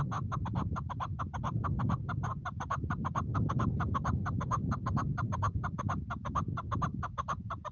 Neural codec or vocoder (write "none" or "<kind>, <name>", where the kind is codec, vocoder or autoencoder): none